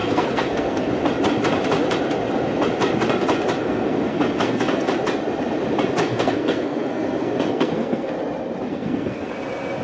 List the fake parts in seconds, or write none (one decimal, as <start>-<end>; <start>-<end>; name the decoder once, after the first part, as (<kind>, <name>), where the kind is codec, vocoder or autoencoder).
0.0-0.9 (codec, SNAC); 3.6-4.9; 6.0-8.1; 8.7-9.3